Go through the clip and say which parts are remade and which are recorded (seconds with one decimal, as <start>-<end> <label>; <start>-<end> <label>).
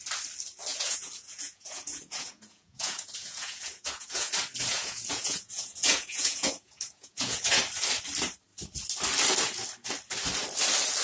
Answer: 0.0-0.7 recorded; 0.7-4.3 remade; 4.3-4.7 recorded; 4.7-7.6 remade; 7.6-11.0 recorded